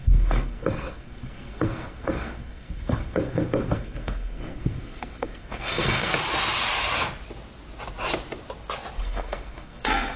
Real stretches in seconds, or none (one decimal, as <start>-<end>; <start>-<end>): 6.1-9.0